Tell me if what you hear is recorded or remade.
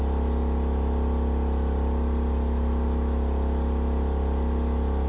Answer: recorded